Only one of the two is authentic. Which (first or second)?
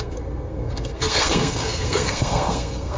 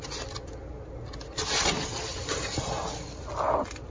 second